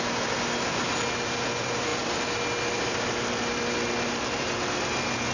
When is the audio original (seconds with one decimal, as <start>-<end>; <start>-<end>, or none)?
0.0-5.3